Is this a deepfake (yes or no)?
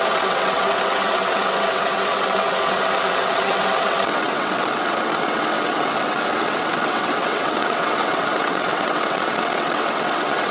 yes